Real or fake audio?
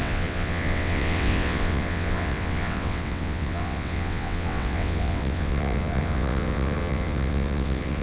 fake